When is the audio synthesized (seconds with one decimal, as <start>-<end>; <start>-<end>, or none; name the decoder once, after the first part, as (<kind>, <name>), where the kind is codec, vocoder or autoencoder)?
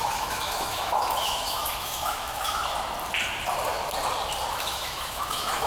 0.0-2.6 (autoencoder, DAC-VAE); 4.5-5.7